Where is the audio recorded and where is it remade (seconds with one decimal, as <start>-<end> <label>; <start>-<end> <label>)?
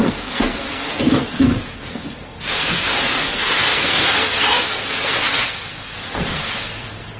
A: 0.0-7.2 remade